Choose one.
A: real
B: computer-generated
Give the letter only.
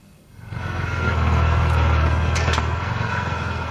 B